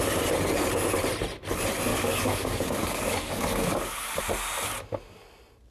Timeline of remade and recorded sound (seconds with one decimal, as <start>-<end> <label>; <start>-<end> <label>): 0.0-1.9 recorded; 1.9-4.2 remade; 4.2-5.7 recorded

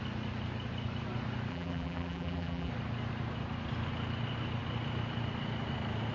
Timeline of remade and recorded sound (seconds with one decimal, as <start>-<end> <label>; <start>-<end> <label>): 0.0-1.5 recorded; 1.5-2.7 remade; 2.7-6.1 recorded

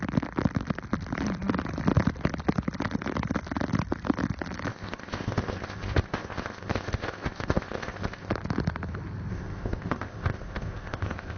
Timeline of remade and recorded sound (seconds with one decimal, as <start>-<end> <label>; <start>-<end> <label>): 0.0-4.7 recorded; 4.7-8.3 remade; 8.3-9.3 recorded; 9.3-11.4 remade

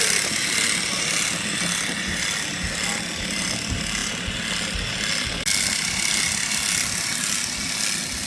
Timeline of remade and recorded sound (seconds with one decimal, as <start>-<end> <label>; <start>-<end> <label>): 0.0-8.3 recorded

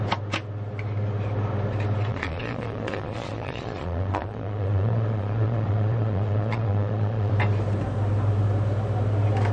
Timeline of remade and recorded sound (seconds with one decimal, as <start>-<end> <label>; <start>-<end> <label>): 0.0-2.1 recorded; 2.1-7.3 remade; 7.3-9.5 recorded